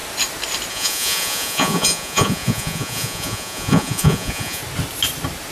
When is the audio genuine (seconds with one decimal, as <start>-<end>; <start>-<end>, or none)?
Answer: 0.0-0.7; 4.6-5.5

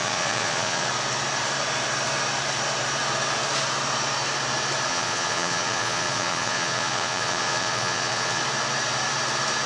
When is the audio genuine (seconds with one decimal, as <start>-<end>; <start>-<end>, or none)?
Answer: 0.9-4.9; 8.4-9.7